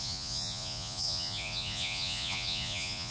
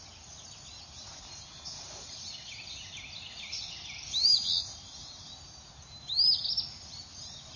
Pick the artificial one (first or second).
first